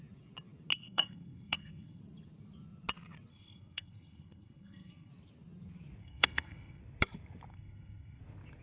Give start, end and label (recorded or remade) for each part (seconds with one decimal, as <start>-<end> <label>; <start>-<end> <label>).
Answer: 0.0-0.7 recorded; 0.7-2.0 remade; 2.0-3.3 recorded; 3.3-5.1 remade; 5.1-6.0 recorded; 6.0-6.8 remade; 6.8-7.5 recorded; 7.5-8.2 remade; 8.2-8.6 recorded